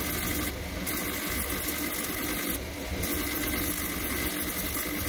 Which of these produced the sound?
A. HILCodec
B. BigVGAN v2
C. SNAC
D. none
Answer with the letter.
D